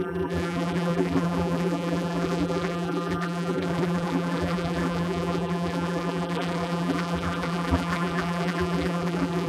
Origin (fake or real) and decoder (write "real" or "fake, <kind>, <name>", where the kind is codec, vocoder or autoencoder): fake, vocoder, BigVGAN v2